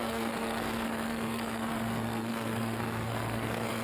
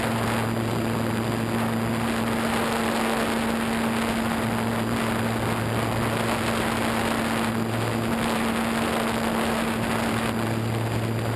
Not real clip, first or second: first